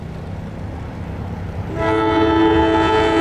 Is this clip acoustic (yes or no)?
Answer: yes